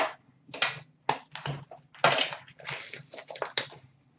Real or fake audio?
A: real